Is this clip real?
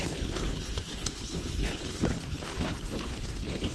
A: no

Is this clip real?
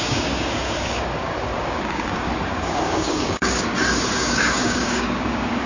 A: no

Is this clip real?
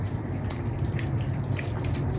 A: no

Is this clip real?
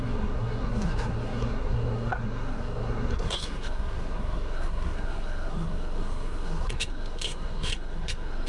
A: no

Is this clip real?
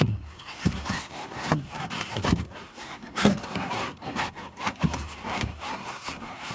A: no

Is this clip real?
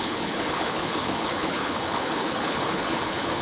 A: no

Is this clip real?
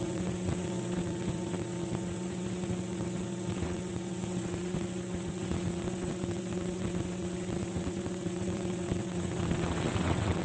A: no